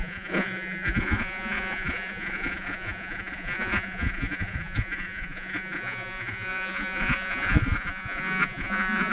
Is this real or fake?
fake